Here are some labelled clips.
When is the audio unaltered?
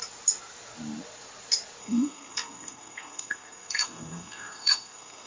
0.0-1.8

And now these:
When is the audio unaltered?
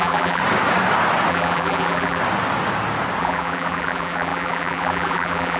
0.4-1.3; 2.2-3.2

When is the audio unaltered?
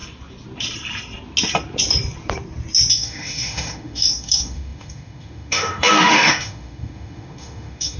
0.0-2.9